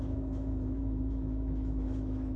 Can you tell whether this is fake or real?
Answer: fake